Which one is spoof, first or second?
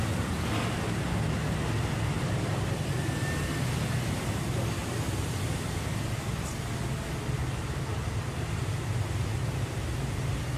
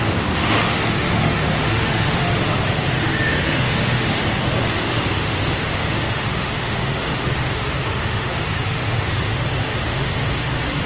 second